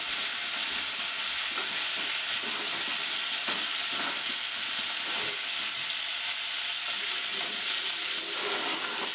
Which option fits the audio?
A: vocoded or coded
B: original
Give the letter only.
B